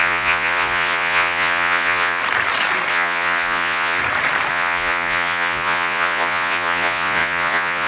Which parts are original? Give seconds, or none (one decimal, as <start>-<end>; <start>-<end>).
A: 2.2-2.9; 4.0-4.5